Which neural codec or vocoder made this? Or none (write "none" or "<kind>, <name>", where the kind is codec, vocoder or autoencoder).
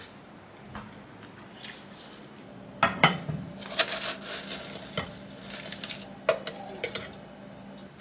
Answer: none